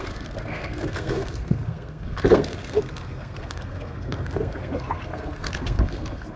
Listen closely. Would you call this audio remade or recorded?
remade